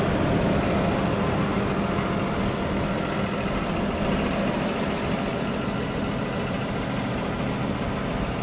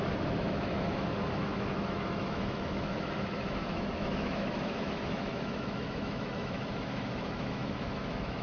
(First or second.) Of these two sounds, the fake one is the second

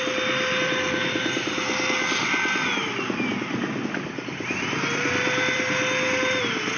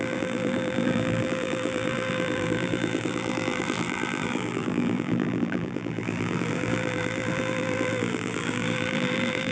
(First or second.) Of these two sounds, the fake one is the second